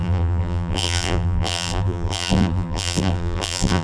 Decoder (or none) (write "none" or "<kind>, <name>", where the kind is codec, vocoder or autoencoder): vocoder, BigVGAN v2